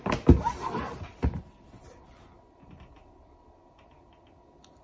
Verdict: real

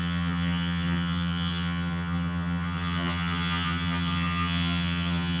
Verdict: fake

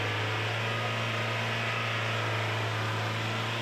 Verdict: real